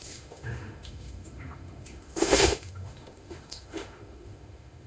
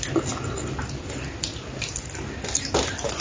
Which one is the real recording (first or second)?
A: second